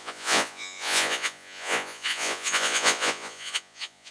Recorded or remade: remade